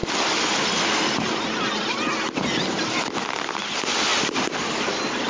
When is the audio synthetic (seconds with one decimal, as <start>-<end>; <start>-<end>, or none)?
none